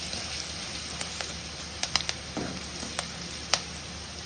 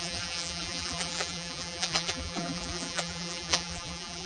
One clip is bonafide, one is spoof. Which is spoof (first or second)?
second